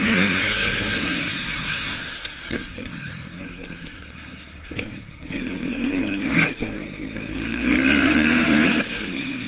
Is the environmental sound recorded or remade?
remade